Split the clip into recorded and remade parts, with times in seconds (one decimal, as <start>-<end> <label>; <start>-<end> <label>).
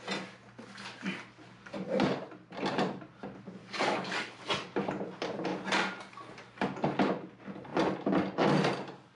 0.0-3.6 recorded; 3.6-4.4 remade; 4.4-9.2 recorded